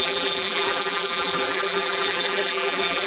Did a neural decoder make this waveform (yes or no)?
yes